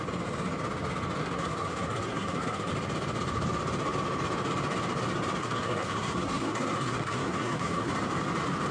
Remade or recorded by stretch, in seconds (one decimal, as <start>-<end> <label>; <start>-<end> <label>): 0.0-1.2 recorded; 1.2-2.7 remade; 2.7-5.4 recorded; 5.4-7.9 remade; 7.9-8.7 recorded

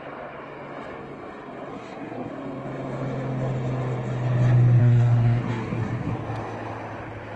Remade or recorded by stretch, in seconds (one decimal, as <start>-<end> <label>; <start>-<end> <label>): 0.0-1.7 recorded; 1.7-2.3 remade; 2.3-4.8 recorded; 4.8-6.1 remade; 6.1-7.4 recorded

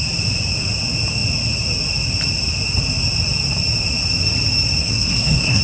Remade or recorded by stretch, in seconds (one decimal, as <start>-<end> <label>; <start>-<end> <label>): 0.0-4.8 recorded; 4.8-5.6 remade

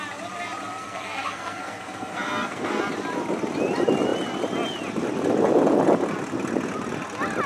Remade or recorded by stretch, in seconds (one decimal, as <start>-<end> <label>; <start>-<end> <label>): 0.0-0.7 recorded; 0.7-2.8 remade; 2.8-7.5 recorded

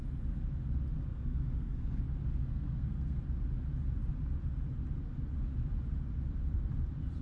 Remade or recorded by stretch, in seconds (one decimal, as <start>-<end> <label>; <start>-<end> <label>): 0.0-1.1 recorded; 1.1-2.0 remade; 2.0-2.4 recorded; 2.4-3.2 remade; 3.2-7.2 recorded

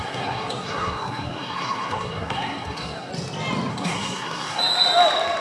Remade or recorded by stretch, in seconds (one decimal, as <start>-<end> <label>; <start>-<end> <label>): 0.0-3.1 remade; 3.1-3.7 recorded; 3.7-4.6 remade; 4.6-5.4 recorded

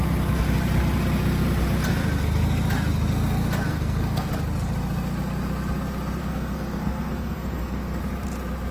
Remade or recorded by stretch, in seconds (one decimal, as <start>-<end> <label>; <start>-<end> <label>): 0.0-3.7 recorded; 3.7-4.3 remade; 4.3-6.2 recorded; 6.2-8.0 remade; 8.0-8.7 recorded

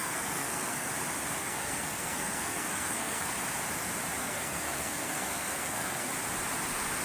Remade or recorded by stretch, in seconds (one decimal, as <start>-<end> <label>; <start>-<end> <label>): 0.0-0.9 remade; 0.9-1.4 recorded; 1.4-3.3 remade; 3.3-4.2 recorded; 4.2-6.1 remade; 6.1-7.0 recorded